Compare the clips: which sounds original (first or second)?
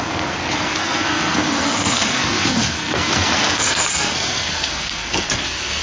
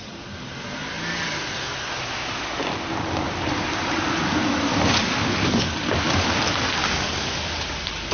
second